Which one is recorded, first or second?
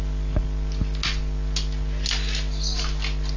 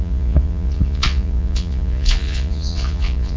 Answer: first